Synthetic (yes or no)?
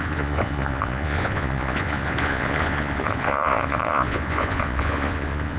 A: yes